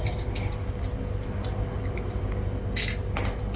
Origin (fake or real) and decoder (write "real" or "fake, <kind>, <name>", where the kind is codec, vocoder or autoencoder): real